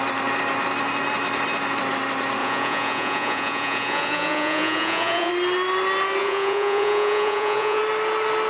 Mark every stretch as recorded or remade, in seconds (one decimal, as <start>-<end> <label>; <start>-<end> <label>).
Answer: 0.0-2.4 recorded; 2.4-5.3 remade; 5.3-6.2 recorded; 6.2-7.8 remade; 7.8-8.5 recorded